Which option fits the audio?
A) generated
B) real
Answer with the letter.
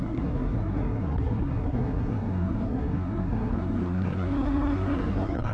A